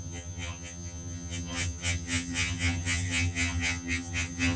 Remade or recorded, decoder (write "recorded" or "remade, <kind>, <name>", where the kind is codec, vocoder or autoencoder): remade, vocoder, HiFi-GAN